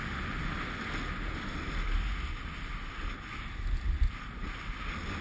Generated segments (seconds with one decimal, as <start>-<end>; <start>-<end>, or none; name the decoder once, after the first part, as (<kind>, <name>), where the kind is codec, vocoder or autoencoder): none

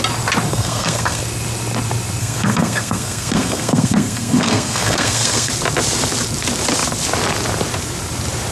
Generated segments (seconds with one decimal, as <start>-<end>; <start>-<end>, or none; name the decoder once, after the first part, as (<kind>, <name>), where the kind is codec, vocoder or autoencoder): 0.5-1.2 (codec, SNAC); 2.2-5.5

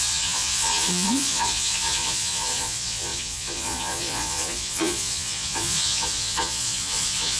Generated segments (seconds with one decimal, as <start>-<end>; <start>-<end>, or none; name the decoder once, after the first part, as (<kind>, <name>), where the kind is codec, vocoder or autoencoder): 0.0-7.4 (vocoder, Vocos)

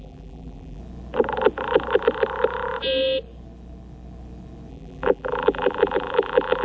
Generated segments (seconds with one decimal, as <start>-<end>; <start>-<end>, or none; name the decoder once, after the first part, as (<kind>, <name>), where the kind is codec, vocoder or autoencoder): 0.0-0.8 (vocoder, BigVGAN v2); 4.7-6.6

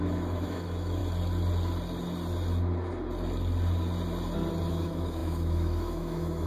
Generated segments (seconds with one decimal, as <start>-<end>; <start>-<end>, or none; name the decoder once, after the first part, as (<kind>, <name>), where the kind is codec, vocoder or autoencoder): 0.0-1.0 (autoencoder, DAC-VAE); 4.7-6.5

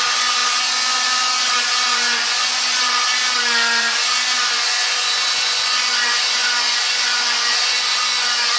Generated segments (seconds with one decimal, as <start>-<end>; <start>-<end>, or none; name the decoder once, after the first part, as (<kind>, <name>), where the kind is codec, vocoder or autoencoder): 0.0-8.6 (vocoder, Vocos)